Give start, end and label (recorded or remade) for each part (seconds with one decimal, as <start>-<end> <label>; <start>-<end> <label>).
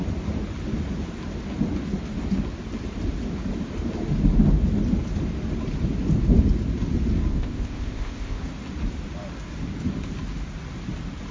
0.0-7.3 recorded; 7.3-8.4 remade; 8.4-11.3 recorded